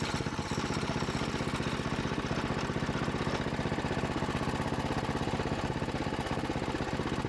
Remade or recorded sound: recorded